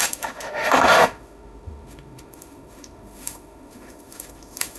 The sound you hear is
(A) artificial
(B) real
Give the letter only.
A